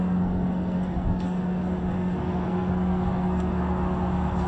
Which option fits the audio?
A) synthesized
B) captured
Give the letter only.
A